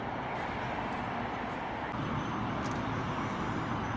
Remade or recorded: recorded